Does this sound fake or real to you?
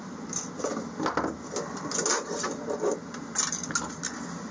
real